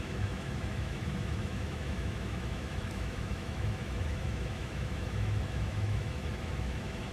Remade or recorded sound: remade